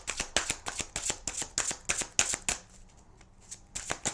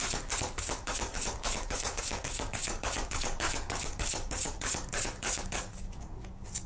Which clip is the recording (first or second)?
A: first